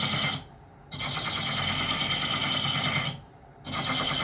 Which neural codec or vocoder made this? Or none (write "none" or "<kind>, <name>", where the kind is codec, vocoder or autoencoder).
none